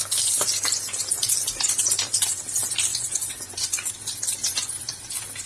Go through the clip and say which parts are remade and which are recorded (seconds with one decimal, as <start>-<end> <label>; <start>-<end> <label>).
0.0-2.9 recorded; 2.9-3.9 remade; 3.9-4.4 recorded; 4.4-5.0 remade; 5.0-5.5 recorded